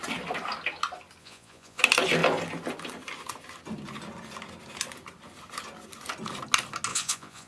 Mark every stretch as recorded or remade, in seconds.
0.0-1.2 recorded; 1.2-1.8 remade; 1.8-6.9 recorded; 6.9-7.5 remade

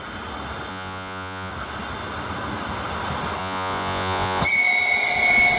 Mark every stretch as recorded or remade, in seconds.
0.0-0.7 recorded; 0.7-1.5 remade; 1.5-3.4 recorded; 3.4-4.4 remade; 4.4-5.6 recorded

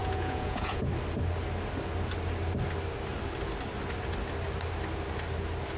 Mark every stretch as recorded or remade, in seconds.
0.0-0.9 remade; 0.9-5.8 recorded

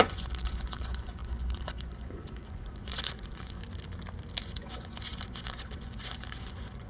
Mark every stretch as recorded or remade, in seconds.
0.0-3.6 remade; 3.6-4.4 recorded; 4.4-6.9 remade

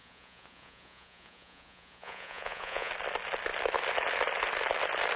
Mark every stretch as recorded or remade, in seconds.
0.0-2.9 remade; 2.9-5.2 recorded

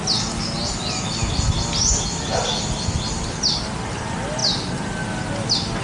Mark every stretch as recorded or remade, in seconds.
0.0-5.8 recorded